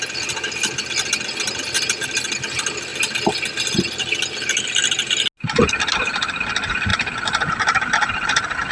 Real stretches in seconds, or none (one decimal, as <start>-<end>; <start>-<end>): 0.0-6.9